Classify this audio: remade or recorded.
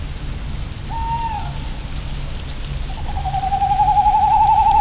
recorded